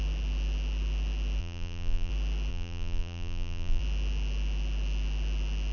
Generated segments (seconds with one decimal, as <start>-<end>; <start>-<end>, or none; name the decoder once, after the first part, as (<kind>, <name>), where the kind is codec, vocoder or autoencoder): 1.4-2.1 (vocoder, BigVGAN v2); 2.5-3.8